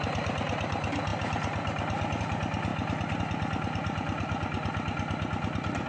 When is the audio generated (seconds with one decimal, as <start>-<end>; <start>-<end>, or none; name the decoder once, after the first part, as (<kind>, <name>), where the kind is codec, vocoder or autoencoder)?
none